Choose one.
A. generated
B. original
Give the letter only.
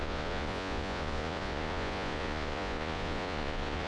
A